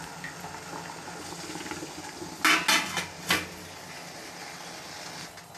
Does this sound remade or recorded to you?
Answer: recorded